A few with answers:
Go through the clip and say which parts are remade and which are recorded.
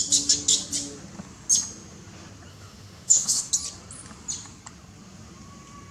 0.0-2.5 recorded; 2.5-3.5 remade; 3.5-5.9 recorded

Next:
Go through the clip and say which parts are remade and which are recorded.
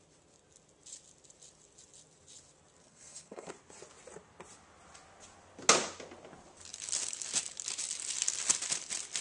0.0-2.8 recorded; 2.8-3.5 remade; 3.5-9.2 recorded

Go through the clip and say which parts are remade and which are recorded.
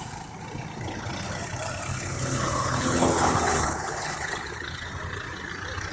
0.0-1.9 recorded; 1.9-4.9 remade; 4.9-5.9 recorded